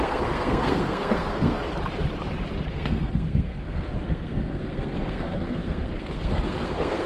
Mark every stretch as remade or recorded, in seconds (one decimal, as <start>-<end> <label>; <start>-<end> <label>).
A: 0.0-1.7 remade; 1.7-2.7 recorded; 2.7-7.1 remade